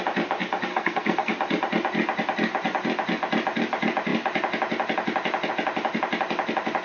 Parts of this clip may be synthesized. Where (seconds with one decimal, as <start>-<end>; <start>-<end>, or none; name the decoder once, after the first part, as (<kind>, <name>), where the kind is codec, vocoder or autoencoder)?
0.7-1.3 (codec, SNAC)